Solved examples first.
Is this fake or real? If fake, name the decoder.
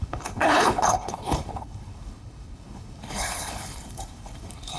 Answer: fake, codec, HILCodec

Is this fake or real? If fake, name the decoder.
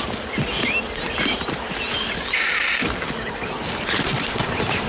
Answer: real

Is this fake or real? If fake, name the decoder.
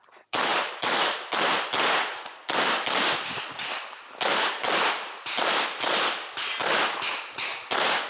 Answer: real